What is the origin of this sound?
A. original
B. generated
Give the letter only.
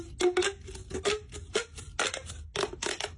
A